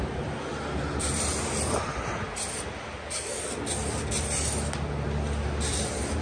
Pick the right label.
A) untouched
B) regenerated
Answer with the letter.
A